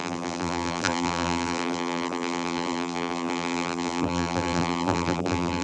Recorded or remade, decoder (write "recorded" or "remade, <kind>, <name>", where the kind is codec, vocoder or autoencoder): remade, vocoder, BigVGAN v2